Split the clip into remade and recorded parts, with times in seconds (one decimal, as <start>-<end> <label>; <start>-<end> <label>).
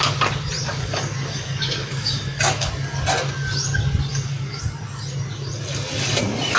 0.0-0.6 recorded; 0.6-2.7 remade; 2.7-4.1 recorded; 4.1-4.6 remade; 4.6-6.6 recorded